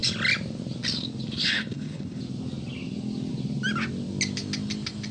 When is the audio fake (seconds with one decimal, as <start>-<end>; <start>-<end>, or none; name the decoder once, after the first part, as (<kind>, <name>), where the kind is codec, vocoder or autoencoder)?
1.4-2.2 (codec, HILCodec)

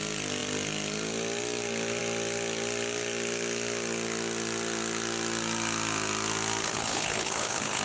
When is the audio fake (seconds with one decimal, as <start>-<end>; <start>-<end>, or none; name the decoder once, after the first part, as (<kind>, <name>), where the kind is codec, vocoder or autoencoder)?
6.6-7.8 (codec, HILCodec)